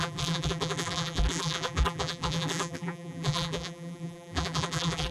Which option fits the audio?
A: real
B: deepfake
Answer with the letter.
B